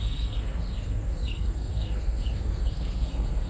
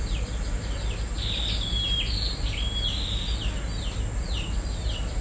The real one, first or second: second